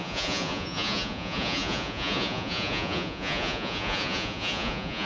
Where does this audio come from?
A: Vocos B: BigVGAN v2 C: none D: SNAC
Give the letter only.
A